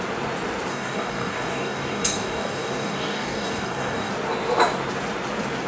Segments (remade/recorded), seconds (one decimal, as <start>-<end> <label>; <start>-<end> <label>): 0.0-0.7 recorded; 0.7-4.1 remade; 4.1-5.7 recorded